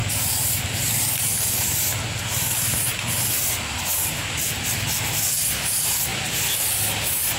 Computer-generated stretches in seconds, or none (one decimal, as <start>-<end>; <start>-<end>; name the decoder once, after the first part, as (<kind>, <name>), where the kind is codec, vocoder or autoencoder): none